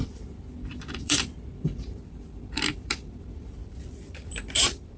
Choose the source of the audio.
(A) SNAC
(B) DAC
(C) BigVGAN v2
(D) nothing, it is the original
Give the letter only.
C